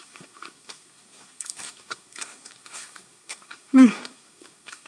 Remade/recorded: remade